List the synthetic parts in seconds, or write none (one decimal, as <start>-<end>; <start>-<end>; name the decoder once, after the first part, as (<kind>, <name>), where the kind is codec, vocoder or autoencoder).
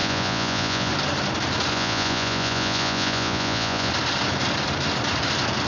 0.0-0.9 (vocoder, Vocos); 1.7-3.9